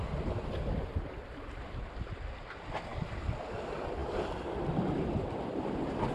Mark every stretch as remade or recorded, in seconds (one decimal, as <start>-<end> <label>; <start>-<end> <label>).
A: 0.0-4.0 recorded; 4.0-6.1 remade